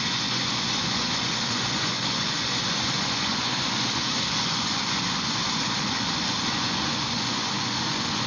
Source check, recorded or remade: remade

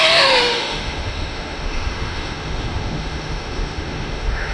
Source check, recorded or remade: remade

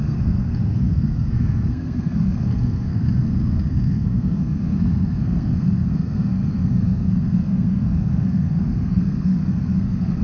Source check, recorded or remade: remade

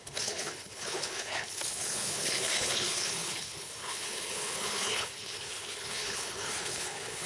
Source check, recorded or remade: remade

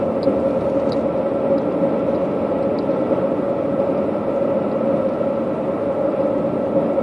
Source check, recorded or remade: recorded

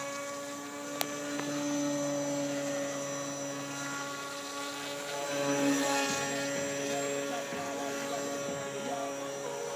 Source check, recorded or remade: recorded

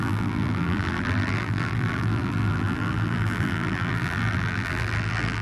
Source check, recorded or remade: remade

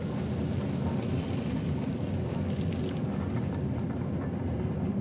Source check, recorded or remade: recorded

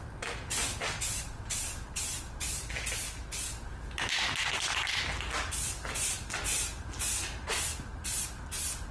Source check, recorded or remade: recorded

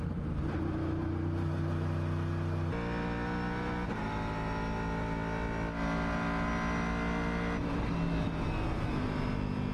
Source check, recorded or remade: recorded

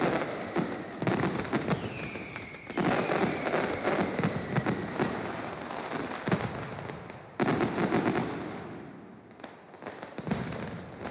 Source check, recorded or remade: recorded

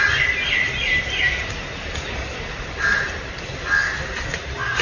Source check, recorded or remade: recorded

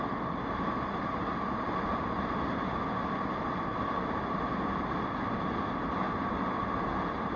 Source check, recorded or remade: recorded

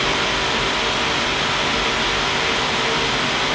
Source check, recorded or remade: recorded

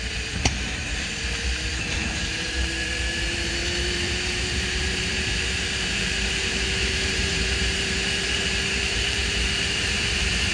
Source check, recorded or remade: remade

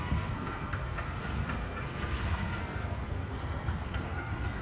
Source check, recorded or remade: remade